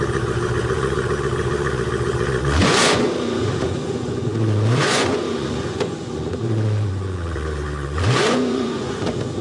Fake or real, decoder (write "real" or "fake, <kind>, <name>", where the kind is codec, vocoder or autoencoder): fake, vocoder, Vocos